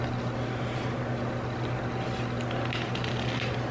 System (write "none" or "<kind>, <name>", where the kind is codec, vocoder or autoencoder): none